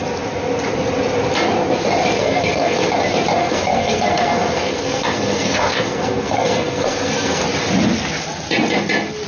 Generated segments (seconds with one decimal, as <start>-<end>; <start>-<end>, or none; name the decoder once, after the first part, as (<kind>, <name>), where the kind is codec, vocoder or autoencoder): 2.2-2.9 (codec, SNAC); 3.4-7.4